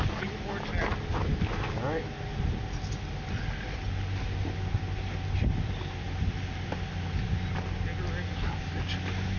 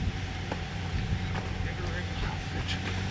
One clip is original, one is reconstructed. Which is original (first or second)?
first